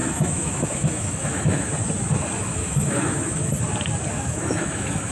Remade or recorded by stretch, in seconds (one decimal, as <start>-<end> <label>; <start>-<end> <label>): 0.0-1.7 remade; 1.7-2.4 recorded; 2.4-3.5 remade; 3.5-4.1 recorded; 4.1-5.1 remade